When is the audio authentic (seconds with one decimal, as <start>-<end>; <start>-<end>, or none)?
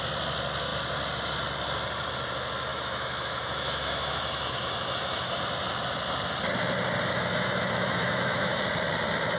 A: 0.0-2.7; 5.4-7.1; 8.6-9.4